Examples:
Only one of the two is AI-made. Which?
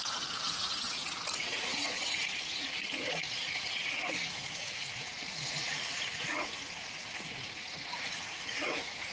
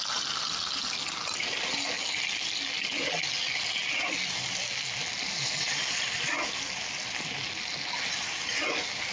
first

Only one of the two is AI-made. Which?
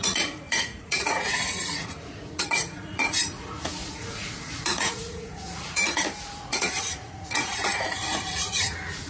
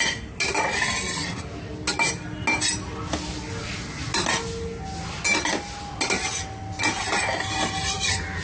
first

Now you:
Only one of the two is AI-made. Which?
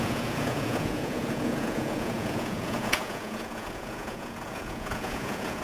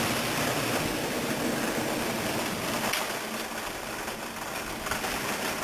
first